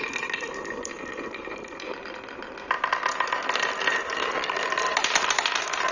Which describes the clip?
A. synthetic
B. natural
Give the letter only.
B